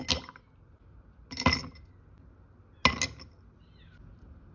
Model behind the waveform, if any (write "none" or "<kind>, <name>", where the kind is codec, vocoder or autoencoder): none